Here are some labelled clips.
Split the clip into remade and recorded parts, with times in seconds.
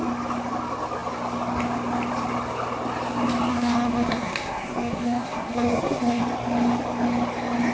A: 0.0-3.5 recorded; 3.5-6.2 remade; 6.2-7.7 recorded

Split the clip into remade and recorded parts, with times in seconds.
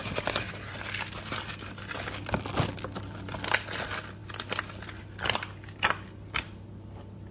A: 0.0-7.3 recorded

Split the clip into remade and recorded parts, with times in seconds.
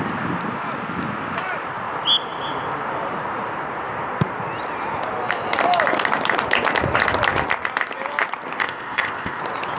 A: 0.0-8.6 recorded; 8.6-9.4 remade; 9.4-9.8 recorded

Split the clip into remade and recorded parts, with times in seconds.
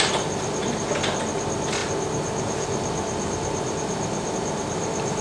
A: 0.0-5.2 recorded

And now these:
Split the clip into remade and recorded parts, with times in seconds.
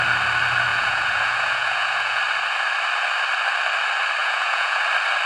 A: 0.0-0.7 recorded; 0.7-2.2 remade; 2.2-4.2 recorded; 4.2-4.8 remade; 4.8-5.3 recorded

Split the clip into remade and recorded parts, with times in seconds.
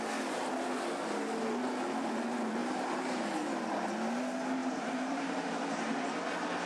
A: 0.0-2.6 recorded; 2.6-3.2 remade; 3.2-4.6 recorded; 4.6-6.2 remade; 6.2-6.7 recorded